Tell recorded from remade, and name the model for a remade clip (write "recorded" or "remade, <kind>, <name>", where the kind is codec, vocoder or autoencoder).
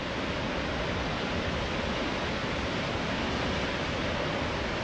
recorded